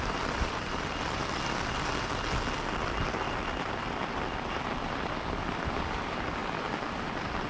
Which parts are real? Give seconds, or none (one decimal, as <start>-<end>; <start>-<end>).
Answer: 1.2-3.0